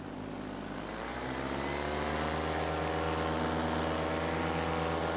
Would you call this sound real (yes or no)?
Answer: yes